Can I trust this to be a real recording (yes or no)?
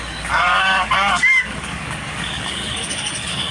no